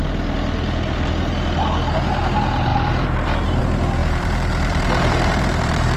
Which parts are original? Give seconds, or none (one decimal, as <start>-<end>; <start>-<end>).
0.0-2.7; 3.6-4.0